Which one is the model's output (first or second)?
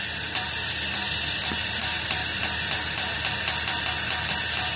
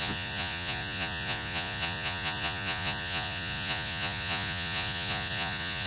second